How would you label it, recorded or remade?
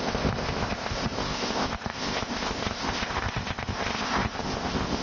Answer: remade